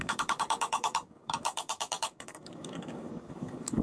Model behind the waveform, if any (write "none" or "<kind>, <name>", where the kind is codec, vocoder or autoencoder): codec, DAC